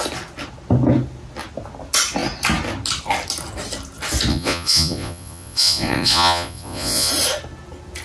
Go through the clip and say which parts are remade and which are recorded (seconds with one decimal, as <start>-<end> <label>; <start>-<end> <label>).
0.0-4.3 recorded; 4.3-7.1 remade; 7.1-8.0 recorded